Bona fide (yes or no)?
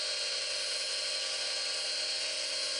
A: yes